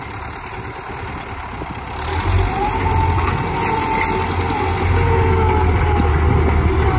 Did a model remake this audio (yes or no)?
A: no